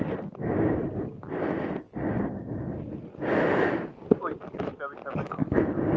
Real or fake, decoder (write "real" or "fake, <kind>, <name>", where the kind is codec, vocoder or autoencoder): real